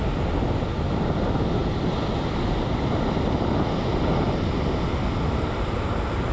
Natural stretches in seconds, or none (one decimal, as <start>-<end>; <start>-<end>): 0.0-6.3